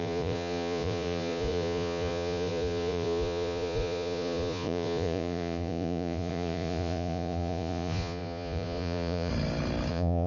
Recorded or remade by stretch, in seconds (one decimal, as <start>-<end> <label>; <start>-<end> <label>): 0.0-9.3 remade; 9.3-9.9 recorded; 9.9-10.3 remade